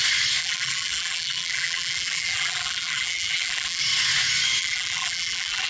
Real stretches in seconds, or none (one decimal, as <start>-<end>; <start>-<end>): 0.0-0.4; 3.8-4.6